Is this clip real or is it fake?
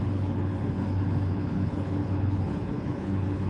fake